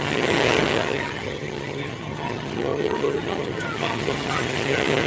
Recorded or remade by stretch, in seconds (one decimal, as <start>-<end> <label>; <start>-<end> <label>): 0.0-5.1 remade